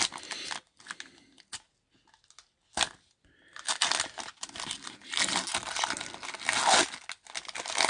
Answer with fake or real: real